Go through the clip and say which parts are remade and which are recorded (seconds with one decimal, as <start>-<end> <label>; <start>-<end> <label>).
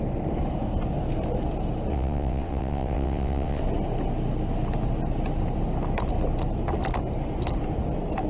0.0-1.9 recorded; 1.9-3.6 remade; 3.6-8.3 recorded